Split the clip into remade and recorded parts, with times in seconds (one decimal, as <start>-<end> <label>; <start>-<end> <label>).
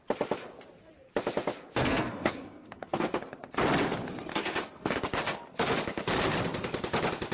0.0-1.8 recorded; 1.8-3.2 remade; 3.2-4.3 recorded; 4.3-5.0 remade; 5.0-7.3 recorded